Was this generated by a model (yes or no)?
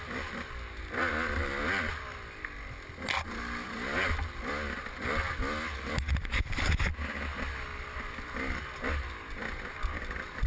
no